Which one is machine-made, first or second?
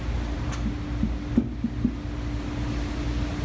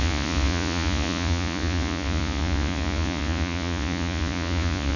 second